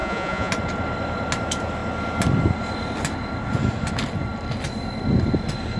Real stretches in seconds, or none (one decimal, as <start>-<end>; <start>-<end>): 0.5-5.8